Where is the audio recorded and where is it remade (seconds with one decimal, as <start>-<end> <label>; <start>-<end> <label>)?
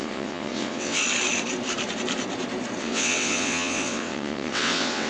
0.0-1.0 remade; 1.0-2.8 recorded; 2.8-5.1 remade